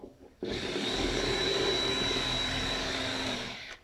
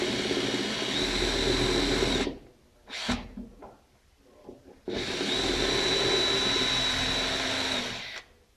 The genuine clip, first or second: second